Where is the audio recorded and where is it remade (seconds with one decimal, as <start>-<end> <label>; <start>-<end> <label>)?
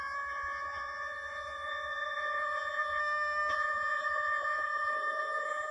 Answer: 0.0-3.0 remade; 3.0-3.5 recorded; 3.5-5.7 remade